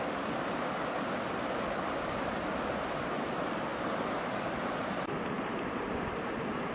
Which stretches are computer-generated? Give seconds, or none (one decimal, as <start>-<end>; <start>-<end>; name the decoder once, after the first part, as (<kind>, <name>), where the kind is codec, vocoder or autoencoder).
none